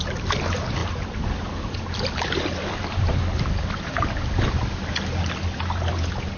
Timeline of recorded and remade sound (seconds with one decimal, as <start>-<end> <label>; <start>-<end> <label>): 0.0-6.4 recorded